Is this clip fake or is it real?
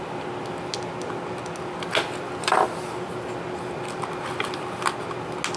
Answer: real